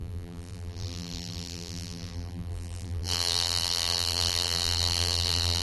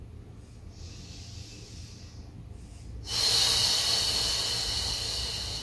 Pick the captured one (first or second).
second